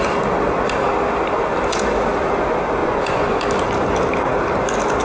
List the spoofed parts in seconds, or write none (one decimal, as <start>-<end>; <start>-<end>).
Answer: 2.8-3.4